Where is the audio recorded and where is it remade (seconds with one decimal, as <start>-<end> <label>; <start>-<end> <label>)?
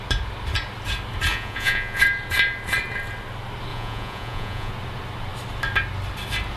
0.0-1.3 recorded; 1.3-2.0 remade; 2.0-3.7 recorded; 3.7-4.7 remade; 4.7-6.6 recorded